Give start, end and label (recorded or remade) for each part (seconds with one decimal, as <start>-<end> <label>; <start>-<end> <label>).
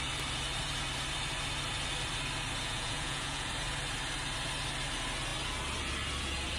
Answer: 0.0-2.6 recorded; 2.6-3.5 remade; 3.5-6.6 recorded